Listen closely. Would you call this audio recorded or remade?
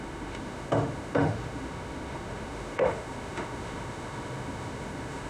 remade